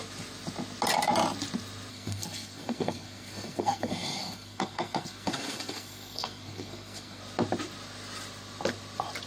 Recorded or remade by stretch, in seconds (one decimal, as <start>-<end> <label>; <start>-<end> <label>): 0.0-1.9 recorded; 1.9-7.2 remade; 7.2-9.3 recorded